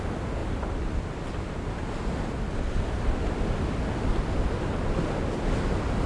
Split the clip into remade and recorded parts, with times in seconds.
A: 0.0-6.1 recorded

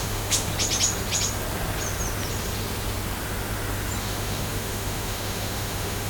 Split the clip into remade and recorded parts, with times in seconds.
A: 0.0-0.5 remade; 0.5-4.0 recorded; 4.0-6.1 remade

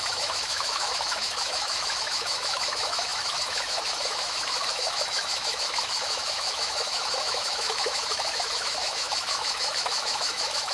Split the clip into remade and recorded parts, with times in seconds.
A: 0.0-10.7 remade

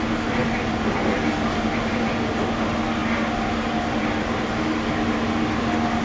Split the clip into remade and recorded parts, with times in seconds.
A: 0.0-6.0 recorded

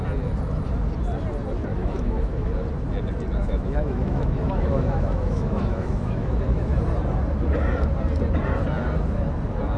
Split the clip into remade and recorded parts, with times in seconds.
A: 0.0-1.7 recorded; 1.7-2.5 remade; 2.5-3.4 recorded; 3.4-6.8 remade; 6.8-9.8 recorded

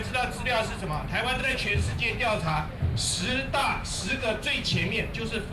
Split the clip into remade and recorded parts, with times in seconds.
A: 0.0-1.4 recorded; 1.4-2.7 remade; 2.7-3.6 recorded; 3.6-5.0 remade; 5.0-5.5 recorded

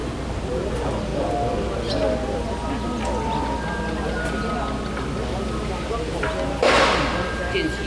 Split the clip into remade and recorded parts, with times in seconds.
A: 0.0-7.9 recorded

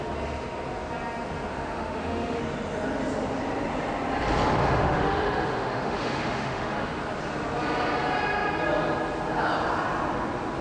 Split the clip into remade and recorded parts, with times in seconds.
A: 0.0-1.5 recorded; 1.5-2.4 remade; 2.4-4.6 recorded; 4.6-7.0 remade; 7.0-10.6 recorded